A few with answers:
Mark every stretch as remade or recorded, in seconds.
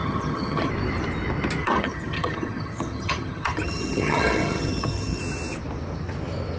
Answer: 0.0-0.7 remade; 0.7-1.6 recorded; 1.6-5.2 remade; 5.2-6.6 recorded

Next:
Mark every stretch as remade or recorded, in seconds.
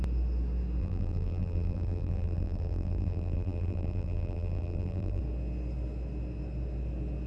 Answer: 0.0-0.8 recorded; 0.8-5.2 remade; 5.2-7.3 recorded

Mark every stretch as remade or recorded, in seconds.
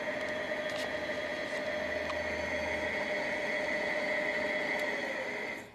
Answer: 0.0-5.7 recorded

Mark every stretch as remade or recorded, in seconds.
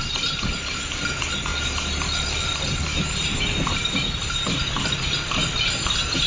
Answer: 0.0-6.3 recorded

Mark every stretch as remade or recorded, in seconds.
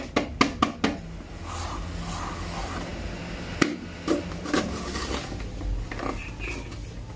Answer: 0.0-7.2 recorded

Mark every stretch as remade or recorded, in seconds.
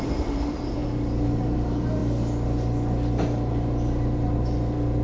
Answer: 0.0-2.0 remade; 2.0-3.5 recorded; 3.5-5.0 remade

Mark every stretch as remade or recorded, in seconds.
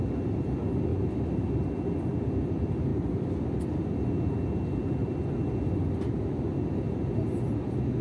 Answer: 0.0-0.9 recorded; 0.9-1.5 remade; 1.5-8.0 recorded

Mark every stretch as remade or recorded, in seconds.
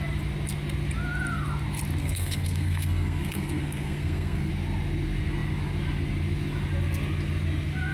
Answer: 0.0-2.0 recorded; 2.0-4.5 remade; 4.5-7.9 recorded